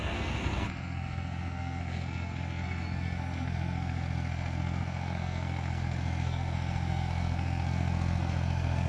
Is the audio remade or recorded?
remade